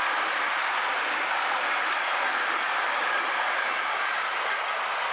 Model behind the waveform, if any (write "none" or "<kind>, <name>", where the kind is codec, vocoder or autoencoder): none